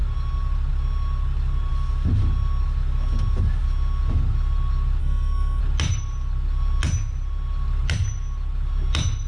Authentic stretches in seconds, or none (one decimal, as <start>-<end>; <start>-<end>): 0.0-5.0; 5.6-9.3